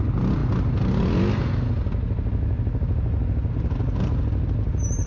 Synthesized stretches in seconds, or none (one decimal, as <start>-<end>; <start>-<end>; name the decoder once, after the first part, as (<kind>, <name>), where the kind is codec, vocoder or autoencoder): none